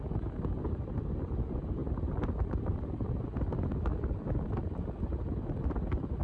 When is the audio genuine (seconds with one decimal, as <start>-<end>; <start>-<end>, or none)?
0.0-6.2